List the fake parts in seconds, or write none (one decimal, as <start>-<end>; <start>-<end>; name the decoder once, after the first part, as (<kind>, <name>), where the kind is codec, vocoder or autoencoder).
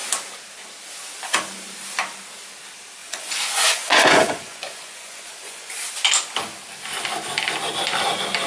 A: 3.0-5.7 (vocoder, Vocos)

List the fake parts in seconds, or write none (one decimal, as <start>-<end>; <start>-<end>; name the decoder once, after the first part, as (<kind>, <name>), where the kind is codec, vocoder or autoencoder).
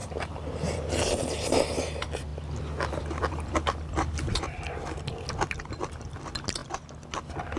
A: 0.0-2.3 (vocoder, BigVGAN v2); 2.9-6.6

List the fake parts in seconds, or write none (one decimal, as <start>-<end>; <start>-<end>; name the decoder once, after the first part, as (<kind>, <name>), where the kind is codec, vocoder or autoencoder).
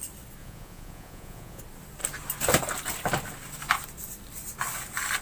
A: 0.4-1.6 (vocoder, Vocos)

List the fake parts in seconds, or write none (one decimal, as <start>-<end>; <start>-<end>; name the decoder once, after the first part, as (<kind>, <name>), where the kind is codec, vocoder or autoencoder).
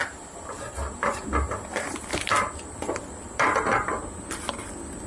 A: 1.7-4.0 (vocoder, BigVGAN v2)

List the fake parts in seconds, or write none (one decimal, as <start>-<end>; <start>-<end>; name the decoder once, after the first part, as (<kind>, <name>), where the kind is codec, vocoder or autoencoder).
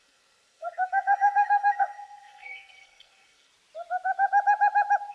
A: 0.0-3.5 (codec, SNAC)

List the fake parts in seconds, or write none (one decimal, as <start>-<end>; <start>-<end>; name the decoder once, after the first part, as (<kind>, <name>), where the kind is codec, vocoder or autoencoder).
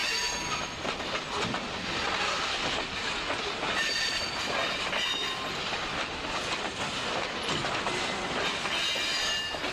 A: none